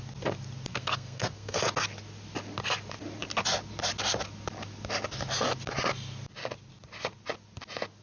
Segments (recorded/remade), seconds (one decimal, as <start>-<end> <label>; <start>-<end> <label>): 0.0-0.7 recorded; 0.7-1.6 remade; 1.6-8.0 recorded